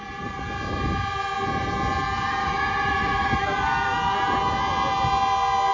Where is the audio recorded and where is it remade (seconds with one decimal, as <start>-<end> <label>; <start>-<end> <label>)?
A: 0.0-2.4 recorded; 2.4-3.3 remade; 3.3-5.7 recorded